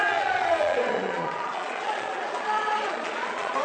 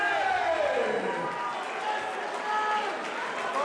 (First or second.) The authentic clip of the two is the second